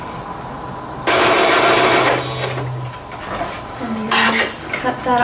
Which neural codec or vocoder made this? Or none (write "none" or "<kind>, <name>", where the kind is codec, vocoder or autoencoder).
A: none